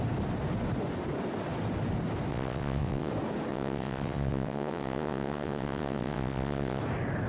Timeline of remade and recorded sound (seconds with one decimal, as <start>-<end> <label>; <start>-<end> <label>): 0.0-2.3 recorded; 2.3-3.1 remade; 3.1-3.5 recorded; 3.5-6.8 remade; 6.8-7.3 recorded